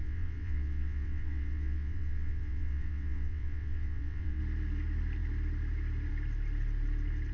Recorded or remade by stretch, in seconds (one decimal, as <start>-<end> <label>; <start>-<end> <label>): 0.0-4.4 remade; 4.4-7.3 recorded